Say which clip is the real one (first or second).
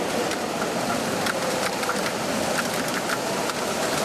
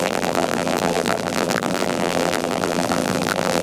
first